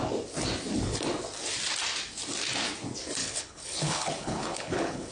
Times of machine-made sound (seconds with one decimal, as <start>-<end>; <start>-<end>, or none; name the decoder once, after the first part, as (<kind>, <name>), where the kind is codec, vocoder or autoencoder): 3.2-5.1 (codec, HILCodec)